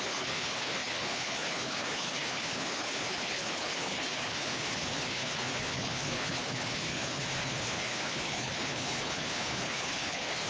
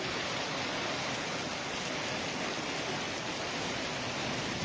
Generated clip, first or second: first